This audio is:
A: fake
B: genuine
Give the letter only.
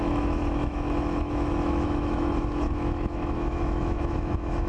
A